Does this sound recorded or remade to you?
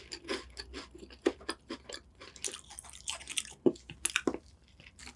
recorded